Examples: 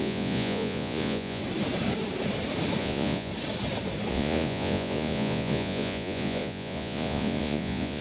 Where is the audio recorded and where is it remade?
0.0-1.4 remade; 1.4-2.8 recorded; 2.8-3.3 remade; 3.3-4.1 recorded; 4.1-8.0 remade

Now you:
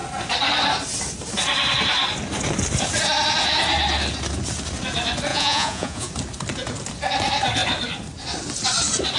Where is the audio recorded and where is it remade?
0.0-5.3 recorded; 5.3-6.1 remade; 6.1-9.2 recorded

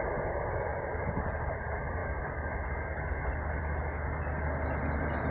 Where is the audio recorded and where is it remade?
0.0-5.3 recorded